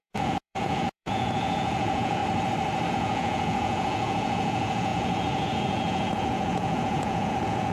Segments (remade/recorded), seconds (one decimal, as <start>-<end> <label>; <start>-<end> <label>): 0.0-2.2 remade; 2.2-2.9 recorded; 2.9-7.7 remade